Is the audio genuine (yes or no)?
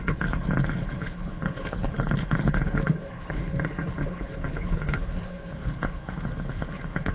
no